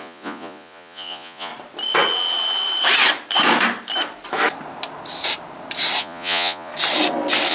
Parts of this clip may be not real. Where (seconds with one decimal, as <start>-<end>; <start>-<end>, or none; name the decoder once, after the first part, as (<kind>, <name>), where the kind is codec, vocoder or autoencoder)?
0.0-1.5 (vocoder, Vocos); 6.0-6.7